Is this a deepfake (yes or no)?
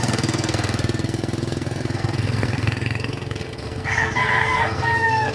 yes